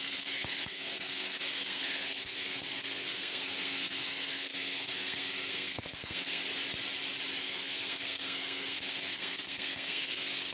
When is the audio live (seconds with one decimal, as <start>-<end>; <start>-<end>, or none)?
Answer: 6.4-7.4